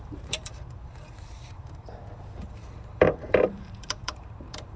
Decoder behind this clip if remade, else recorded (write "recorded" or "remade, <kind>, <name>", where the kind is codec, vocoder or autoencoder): remade, vocoder, BigVGAN v2